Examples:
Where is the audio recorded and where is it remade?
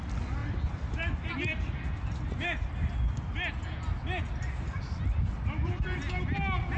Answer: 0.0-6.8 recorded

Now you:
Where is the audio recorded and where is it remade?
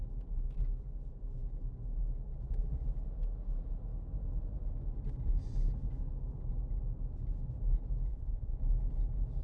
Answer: 0.0-8.1 recorded; 8.1-8.6 remade; 8.6-9.4 recorded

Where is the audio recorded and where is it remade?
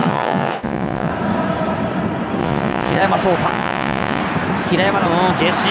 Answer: 0.0-1.1 remade; 1.1-2.4 recorded; 2.4-3.0 remade; 3.0-3.5 recorded; 3.5-4.2 remade; 4.2-5.7 recorded